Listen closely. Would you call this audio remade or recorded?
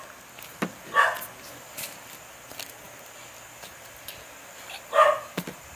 recorded